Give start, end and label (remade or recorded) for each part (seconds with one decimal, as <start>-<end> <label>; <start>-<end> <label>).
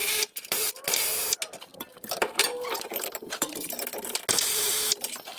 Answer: 0.0-0.7 remade; 0.7-1.7 recorded; 1.7-4.7 remade; 4.7-5.4 recorded